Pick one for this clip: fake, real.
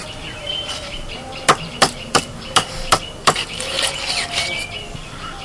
real